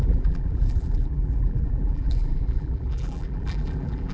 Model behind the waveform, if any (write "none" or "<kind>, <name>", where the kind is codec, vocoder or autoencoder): vocoder, BigVGAN v2